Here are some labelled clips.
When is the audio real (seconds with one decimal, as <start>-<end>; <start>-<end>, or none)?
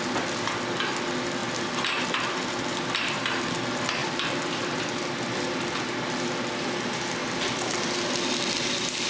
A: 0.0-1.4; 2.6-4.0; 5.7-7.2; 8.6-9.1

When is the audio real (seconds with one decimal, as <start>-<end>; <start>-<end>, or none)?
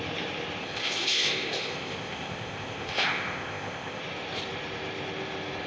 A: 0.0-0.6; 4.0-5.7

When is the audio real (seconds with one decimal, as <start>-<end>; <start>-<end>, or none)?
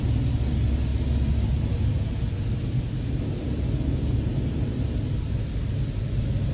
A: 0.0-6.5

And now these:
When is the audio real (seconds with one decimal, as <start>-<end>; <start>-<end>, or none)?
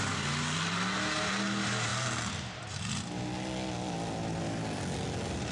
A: 0.0-5.5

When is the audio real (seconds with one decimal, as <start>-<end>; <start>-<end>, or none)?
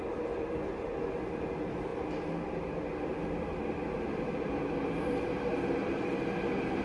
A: 0.0-6.8